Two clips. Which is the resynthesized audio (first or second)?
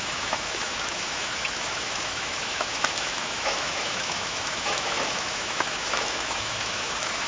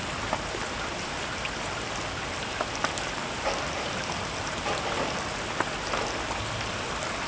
first